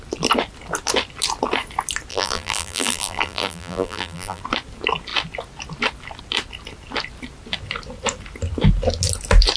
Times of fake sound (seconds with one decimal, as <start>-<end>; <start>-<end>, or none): 2.1-4.4